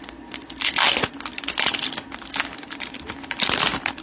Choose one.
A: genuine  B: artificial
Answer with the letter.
A